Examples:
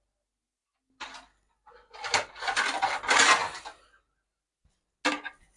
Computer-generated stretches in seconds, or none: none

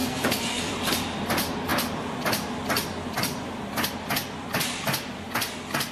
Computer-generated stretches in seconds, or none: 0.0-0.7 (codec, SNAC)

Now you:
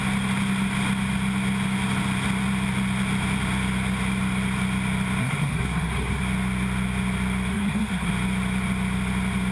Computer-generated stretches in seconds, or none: 5.2-6.2 (codec, SNAC); 7.5-8.1